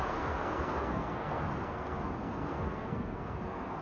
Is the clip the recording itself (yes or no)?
no